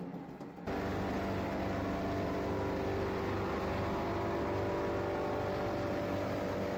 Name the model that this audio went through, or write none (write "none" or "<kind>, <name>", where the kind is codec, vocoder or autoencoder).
none